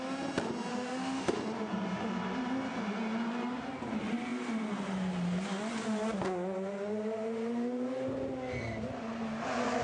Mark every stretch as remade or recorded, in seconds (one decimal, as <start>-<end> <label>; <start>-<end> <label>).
0.0-0.7 recorded; 0.7-1.4 remade; 1.4-9.8 recorded